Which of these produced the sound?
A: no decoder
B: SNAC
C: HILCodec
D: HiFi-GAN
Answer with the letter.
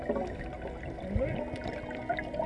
A